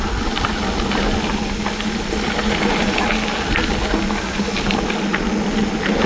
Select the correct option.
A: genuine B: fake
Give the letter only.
A